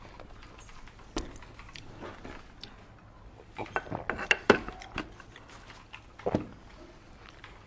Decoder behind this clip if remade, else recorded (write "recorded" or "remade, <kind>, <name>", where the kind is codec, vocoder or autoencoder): recorded